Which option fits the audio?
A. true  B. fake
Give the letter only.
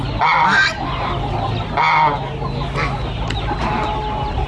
A